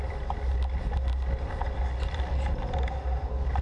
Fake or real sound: real